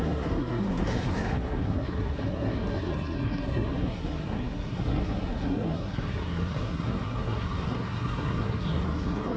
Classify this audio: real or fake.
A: fake